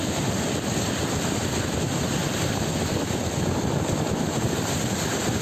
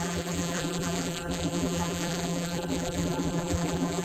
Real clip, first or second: first